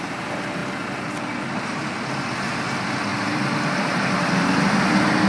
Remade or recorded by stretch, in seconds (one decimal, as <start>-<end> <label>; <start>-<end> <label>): 0.0-3.1 recorded; 3.1-4.0 remade; 4.0-5.3 recorded